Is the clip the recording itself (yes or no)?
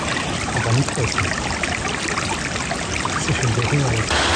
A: yes